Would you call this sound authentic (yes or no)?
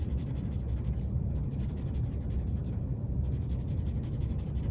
yes